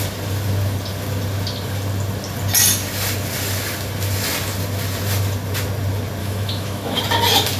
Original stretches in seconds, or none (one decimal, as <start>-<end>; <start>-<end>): 0.0-6.2; 7.0-7.6